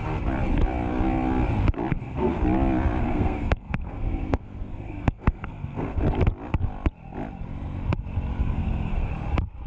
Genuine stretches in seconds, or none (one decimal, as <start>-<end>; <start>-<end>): 0.0-1.9; 2.4-3.0; 6.0-8.4; 9.1-9.7